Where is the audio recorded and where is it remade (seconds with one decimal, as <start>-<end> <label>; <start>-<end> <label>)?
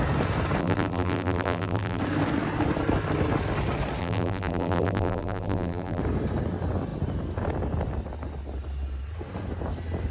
0.0-0.6 recorded; 0.6-2.0 remade; 2.0-4.0 recorded; 4.0-6.0 remade; 6.0-10.1 recorded